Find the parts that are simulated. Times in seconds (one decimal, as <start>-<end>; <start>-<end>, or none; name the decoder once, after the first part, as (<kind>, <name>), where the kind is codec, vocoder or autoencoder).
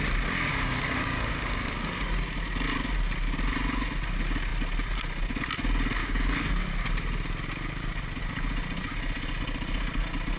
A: 0.5-2.1 (codec, DAC); 6.0-6.5